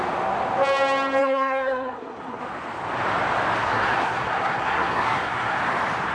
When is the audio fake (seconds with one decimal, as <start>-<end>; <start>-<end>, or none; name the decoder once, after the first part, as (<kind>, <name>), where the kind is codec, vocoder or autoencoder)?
1.2-2.4 (codec, SNAC); 3.6-5.6